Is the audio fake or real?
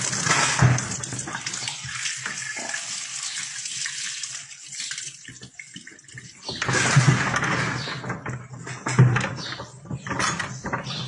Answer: real